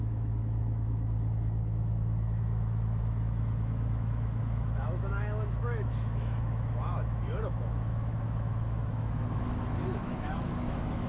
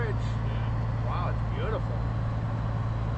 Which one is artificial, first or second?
first